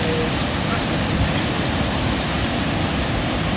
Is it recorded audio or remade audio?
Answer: recorded